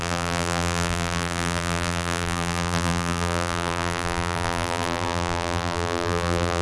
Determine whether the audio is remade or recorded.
remade